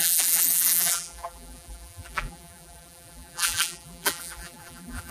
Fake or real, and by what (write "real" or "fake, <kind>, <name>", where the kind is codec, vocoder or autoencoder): fake, vocoder, BigVGAN v2